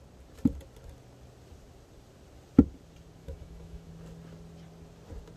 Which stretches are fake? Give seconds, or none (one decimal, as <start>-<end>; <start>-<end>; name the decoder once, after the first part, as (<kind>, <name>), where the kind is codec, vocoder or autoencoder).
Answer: 3.2-3.9 (autoencoder, DAC-VAE)